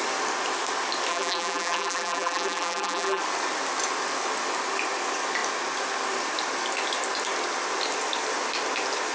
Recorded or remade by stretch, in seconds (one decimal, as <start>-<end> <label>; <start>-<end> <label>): 0.0-1.1 recorded; 1.1-3.2 remade; 3.2-9.1 recorded